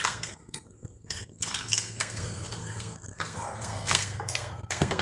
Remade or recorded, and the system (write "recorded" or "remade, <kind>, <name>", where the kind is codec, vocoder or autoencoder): remade, codec, SNAC